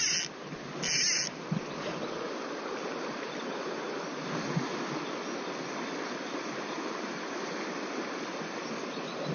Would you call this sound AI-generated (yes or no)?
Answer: no